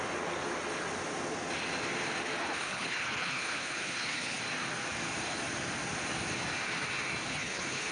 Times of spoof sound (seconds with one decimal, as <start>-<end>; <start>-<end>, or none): 2.4-4.4; 7.3-7.9